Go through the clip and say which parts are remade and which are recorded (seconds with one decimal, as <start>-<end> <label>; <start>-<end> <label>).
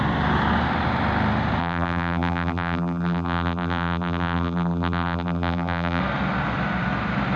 0.0-1.6 recorded; 1.6-6.0 remade; 6.0-7.4 recorded